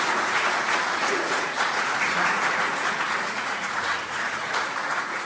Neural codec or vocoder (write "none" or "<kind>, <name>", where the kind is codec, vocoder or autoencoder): vocoder, Vocos